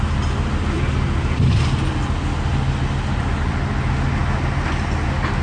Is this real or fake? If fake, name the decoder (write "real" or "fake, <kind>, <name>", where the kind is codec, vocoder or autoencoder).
real